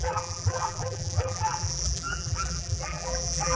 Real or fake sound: fake